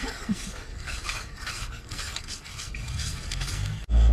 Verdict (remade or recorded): remade